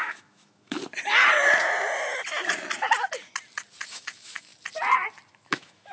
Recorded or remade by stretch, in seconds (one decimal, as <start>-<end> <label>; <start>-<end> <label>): 0.0-0.8 remade; 0.8-3.9 recorded; 3.9-4.5 remade; 4.5-5.3 recorded; 5.3-5.9 remade